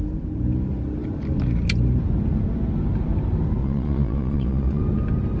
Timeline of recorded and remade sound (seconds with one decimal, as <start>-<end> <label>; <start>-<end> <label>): 0.0-3.6 recorded; 3.6-4.8 remade; 4.8-5.4 recorded